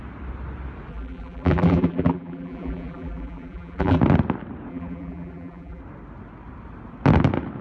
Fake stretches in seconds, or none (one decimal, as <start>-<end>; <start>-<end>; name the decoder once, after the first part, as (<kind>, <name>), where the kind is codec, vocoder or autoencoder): 0.9-4.0 (vocoder, BigVGAN v2); 4.7-5.8